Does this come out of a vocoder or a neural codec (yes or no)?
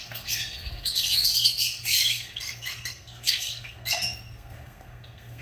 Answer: yes